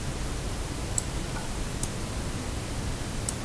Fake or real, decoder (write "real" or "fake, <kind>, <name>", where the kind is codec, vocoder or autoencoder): real